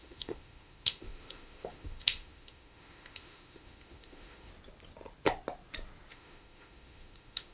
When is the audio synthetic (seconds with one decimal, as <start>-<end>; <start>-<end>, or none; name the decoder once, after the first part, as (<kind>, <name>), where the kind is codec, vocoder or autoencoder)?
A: 0.0-4.5 (autoencoder, DAC-VAE); 6.1-7.5